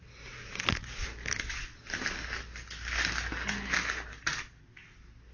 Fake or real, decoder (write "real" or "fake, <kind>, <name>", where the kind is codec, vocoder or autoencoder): real